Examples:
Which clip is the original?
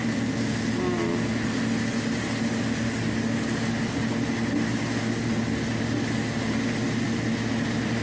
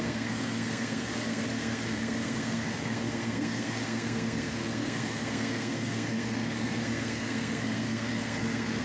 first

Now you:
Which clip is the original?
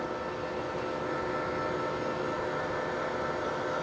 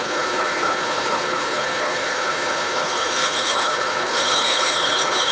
first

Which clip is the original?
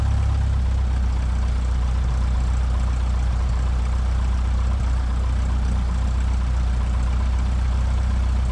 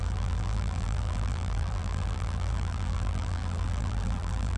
first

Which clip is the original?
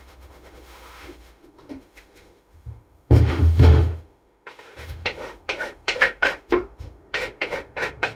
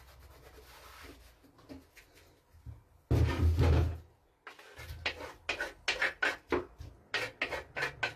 second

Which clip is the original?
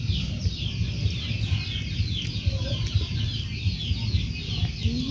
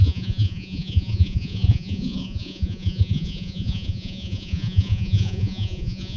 first